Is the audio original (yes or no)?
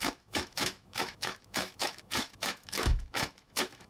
no